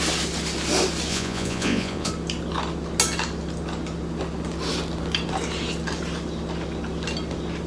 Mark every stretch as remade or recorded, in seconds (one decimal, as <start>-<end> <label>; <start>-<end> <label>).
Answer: 0.0-1.1 recorded; 1.1-2.1 remade; 2.1-7.7 recorded